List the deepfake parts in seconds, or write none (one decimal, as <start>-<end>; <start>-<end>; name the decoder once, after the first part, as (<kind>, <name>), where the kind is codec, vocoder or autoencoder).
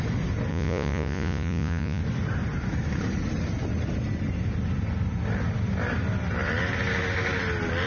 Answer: 0.5-2.0 (vocoder, Vocos)